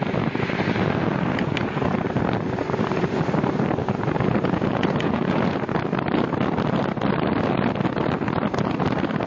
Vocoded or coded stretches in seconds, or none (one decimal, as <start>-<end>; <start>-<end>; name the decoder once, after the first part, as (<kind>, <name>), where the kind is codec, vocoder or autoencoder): 3.8-5.8 (vocoder, Vocos)